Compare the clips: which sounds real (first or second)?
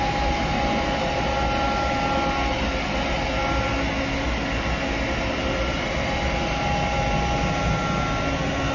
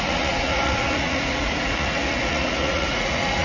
first